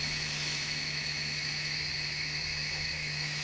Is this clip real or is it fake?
fake